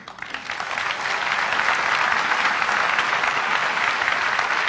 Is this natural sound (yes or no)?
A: yes